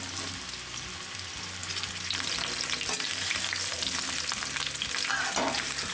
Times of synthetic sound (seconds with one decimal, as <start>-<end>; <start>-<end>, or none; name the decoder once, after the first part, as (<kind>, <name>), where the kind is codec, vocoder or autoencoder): none